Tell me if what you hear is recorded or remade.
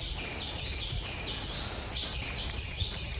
recorded